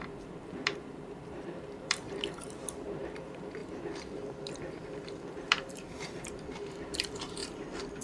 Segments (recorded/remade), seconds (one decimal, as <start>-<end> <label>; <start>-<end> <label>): 0.0-8.0 remade